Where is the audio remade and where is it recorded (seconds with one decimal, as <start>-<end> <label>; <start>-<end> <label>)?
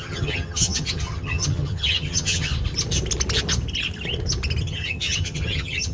0.0-2.5 remade; 2.5-4.6 recorded; 4.6-5.9 remade